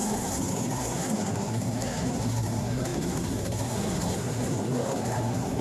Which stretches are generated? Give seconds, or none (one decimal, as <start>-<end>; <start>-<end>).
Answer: 0.0-5.6